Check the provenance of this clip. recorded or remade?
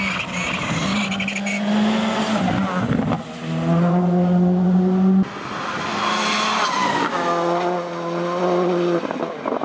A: recorded